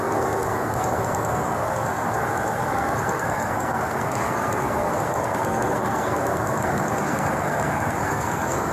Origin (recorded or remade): remade